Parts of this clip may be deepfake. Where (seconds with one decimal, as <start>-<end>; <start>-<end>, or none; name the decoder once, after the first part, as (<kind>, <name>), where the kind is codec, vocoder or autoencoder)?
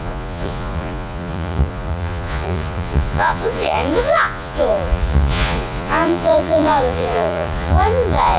0.0-8.4 (vocoder, Vocos)